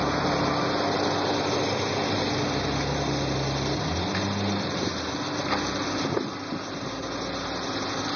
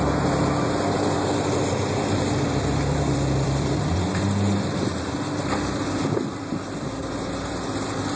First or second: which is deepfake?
second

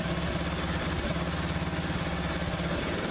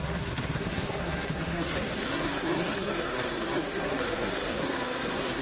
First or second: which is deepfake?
second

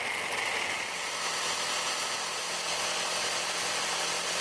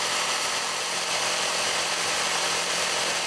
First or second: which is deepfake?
second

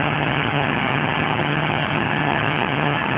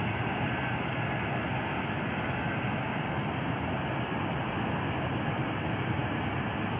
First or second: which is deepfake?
first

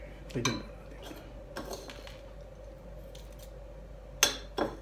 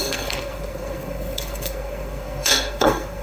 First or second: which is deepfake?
second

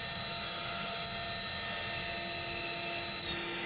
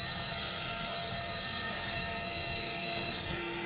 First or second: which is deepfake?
second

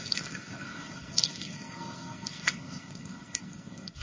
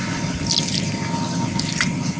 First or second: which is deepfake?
first